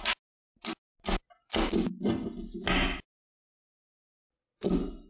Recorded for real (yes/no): yes